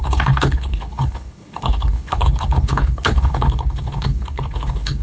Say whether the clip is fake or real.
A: fake